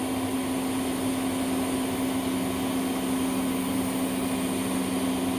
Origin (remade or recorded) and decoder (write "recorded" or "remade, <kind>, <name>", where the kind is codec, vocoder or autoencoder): recorded